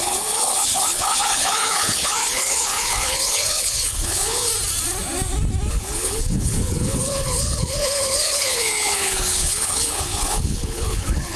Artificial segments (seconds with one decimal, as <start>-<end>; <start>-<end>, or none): 0.0-4.5; 5.7-11.4